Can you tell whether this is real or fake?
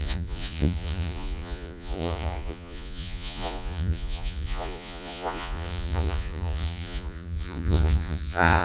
fake